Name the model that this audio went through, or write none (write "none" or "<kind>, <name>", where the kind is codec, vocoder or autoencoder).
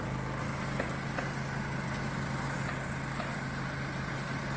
none